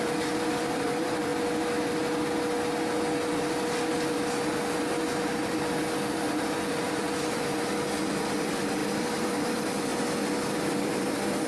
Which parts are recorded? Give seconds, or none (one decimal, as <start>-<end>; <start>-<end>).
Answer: 1.3-6.3